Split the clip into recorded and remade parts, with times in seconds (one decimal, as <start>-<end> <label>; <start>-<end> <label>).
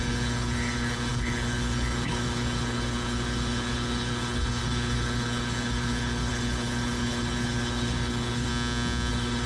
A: 0.0-8.5 remade; 8.5-9.1 recorded; 9.1-9.5 remade